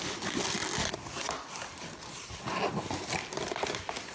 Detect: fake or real real